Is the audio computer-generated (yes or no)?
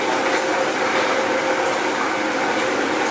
no